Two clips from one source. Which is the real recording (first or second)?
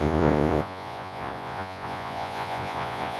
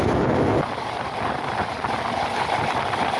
second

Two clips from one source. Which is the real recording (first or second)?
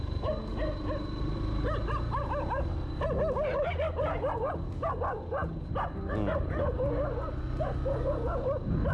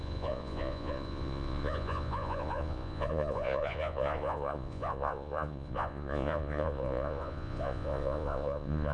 first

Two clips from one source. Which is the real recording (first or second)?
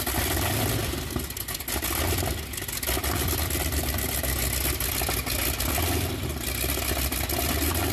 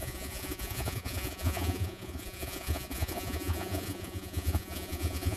first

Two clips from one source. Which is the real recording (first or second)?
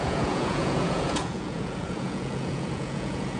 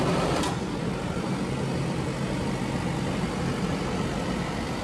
second